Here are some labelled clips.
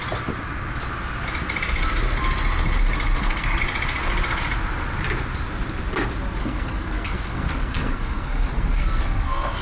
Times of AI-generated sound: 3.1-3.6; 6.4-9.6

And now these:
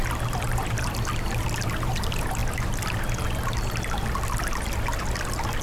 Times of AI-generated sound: none

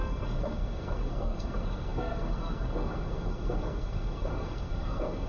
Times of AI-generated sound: 0.0-5.3

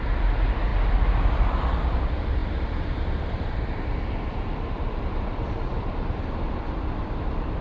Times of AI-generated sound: 0.0-7.6

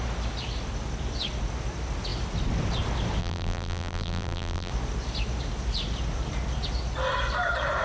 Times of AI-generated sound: 3.2-4.7